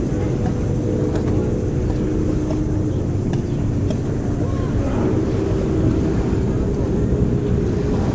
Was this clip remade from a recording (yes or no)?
no